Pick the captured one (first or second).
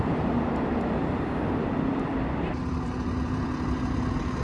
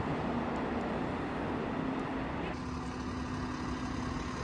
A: second